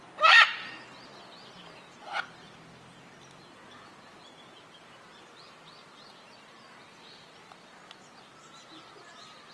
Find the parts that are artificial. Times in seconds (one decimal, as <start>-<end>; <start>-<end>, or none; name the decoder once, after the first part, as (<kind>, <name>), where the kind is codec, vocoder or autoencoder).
1.1-2.2 (vocoder, BigVGAN v2)